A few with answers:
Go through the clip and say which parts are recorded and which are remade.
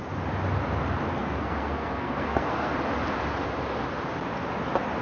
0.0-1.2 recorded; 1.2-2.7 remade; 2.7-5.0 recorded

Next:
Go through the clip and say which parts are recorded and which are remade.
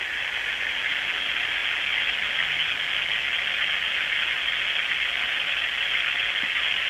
0.0-6.9 recorded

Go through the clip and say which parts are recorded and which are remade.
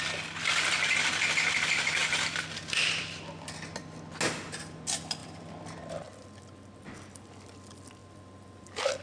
0.0-2.0 recorded; 2.0-2.6 remade; 2.6-5.2 recorded; 5.2-6.3 remade; 6.3-8.0 recorded; 8.0-9.0 remade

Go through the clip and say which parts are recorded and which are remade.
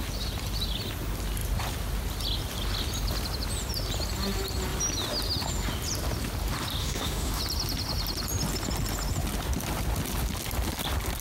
0.0-6.8 recorded; 6.8-7.4 remade; 7.4-11.2 recorded